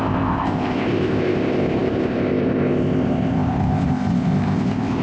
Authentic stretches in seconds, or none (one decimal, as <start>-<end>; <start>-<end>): none

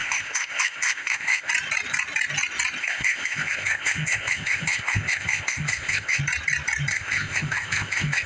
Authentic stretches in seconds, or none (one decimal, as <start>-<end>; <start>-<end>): 1.5-2.8; 6.2-6.9

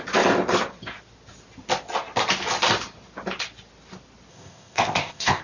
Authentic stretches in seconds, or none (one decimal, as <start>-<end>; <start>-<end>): 0.0-4.3